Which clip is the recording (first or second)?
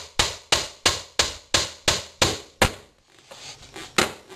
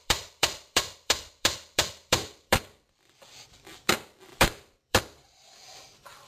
first